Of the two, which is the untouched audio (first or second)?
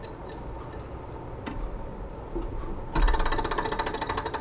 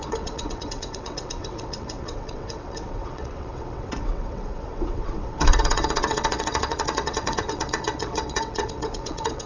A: first